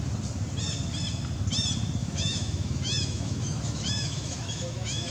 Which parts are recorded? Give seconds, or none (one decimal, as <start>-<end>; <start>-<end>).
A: 0.0-2.0